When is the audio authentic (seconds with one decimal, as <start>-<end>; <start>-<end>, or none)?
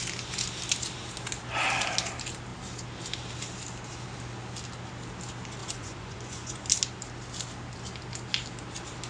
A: 0.0-5.6; 6.6-9.1